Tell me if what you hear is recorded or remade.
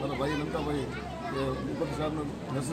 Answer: recorded